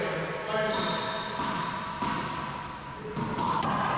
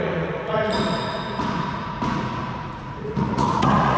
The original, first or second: first